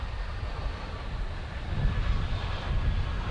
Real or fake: real